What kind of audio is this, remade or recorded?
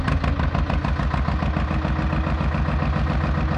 recorded